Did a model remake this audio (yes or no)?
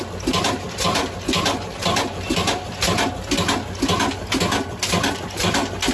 no